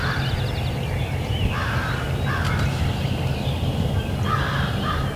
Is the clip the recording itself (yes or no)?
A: yes